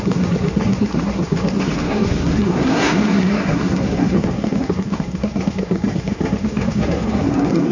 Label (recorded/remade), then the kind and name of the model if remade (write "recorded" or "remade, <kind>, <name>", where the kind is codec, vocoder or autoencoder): remade, codec, SNAC